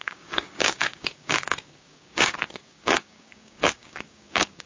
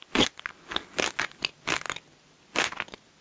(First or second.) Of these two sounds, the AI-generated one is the first